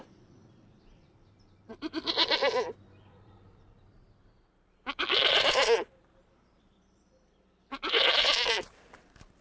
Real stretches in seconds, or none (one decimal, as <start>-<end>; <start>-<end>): none